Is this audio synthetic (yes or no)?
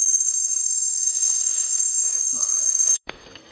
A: yes